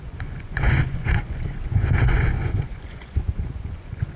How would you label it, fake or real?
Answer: fake